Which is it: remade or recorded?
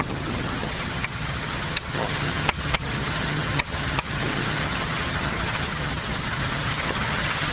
remade